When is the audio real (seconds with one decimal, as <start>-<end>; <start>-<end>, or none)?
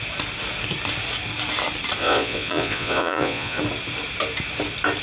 0.0-2.0; 3.6-5.0